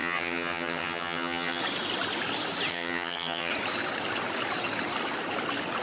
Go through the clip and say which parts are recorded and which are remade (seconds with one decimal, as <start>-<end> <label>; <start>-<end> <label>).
0.0-1.6 remade; 1.6-2.7 recorded; 2.7-3.5 remade; 3.5-5.8 recorded